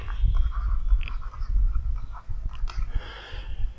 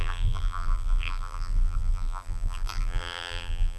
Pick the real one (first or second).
first